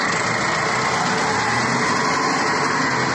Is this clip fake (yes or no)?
no